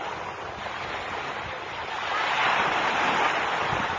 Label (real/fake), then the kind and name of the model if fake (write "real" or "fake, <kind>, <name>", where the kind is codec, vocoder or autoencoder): real